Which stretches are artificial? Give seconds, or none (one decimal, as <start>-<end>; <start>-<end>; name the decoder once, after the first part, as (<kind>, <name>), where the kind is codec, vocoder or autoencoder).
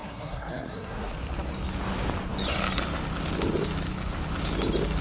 0.0-1.1 (codec, SNAC)